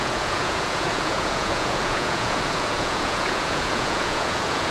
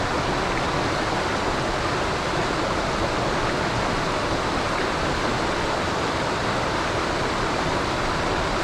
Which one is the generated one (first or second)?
first